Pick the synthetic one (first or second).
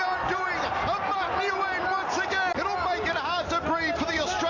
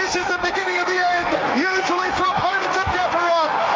second